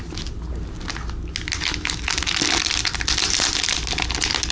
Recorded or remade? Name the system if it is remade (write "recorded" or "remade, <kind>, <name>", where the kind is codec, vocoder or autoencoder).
recorded